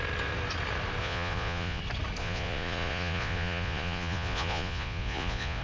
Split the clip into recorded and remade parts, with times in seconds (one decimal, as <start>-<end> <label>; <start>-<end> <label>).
0.0-1.0 recorded; 1.0-1.8 remade; 1.8-2.2 recorded; 2.2-5.6 remade